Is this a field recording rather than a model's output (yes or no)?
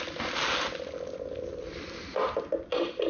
yes